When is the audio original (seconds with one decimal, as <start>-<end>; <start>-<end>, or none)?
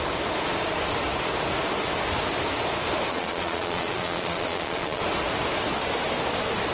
0.0-3.1; 5.0-6.7